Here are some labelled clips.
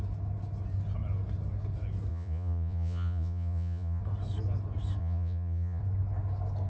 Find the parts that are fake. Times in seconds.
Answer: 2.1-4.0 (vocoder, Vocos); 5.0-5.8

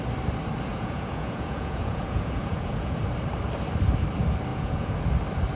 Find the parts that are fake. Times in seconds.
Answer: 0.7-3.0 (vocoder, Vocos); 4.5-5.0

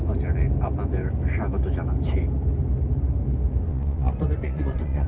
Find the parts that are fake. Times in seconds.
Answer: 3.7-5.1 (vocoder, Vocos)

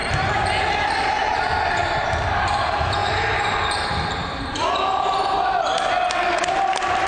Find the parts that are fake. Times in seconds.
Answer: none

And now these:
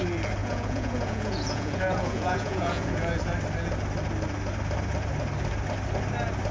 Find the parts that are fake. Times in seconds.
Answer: 0.4-3.2 (vocoder, Vocos)

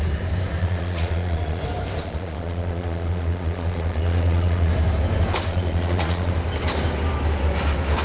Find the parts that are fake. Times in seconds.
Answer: 0.6-1.6 (vocoder, Vocos); 2.0-4.7; 5.5-6.3